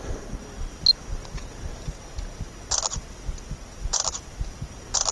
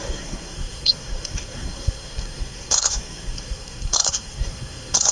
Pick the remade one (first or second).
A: second